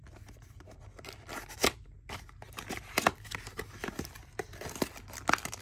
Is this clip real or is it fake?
real